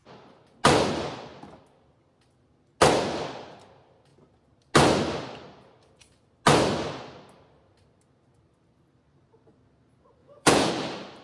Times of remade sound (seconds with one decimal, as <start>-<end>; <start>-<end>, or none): 10.2-10.7